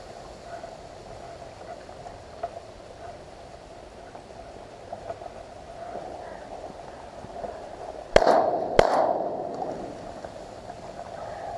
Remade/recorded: recorded